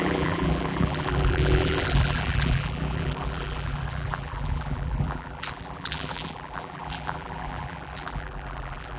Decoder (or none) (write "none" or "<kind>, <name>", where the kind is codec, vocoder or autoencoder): vocoder, BigVGAN v2